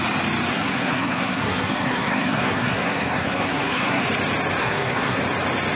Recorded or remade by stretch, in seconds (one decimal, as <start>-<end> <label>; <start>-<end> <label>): 0.0-0.5 recorded; 0.5-4.0 remade; 4.0-4.6 recorded; 4.6-5.2 remade; 5.2-5.8 recorded